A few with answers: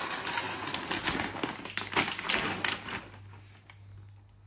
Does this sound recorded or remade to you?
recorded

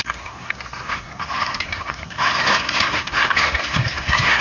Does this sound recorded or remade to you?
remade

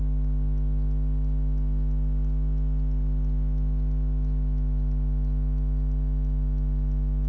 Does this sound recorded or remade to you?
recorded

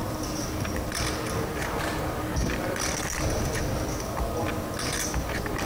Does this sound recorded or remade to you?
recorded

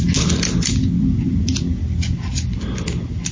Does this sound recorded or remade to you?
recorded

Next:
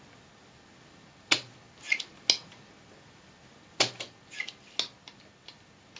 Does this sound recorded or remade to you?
recorded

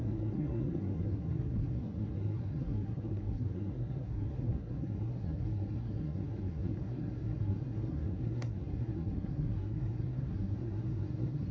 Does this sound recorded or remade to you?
remade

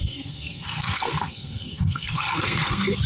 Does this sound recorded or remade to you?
remade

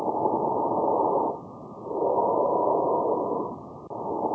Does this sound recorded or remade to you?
recorded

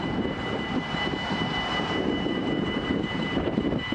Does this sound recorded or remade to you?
remade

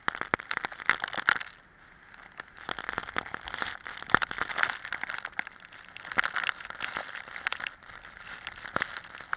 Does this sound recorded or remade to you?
recorded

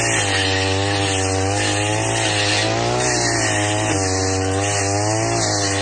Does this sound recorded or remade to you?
recorded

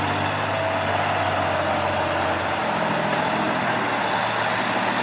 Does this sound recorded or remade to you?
recorded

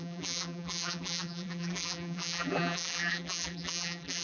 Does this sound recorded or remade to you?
remade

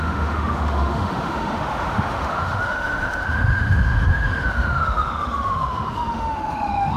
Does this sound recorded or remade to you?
remade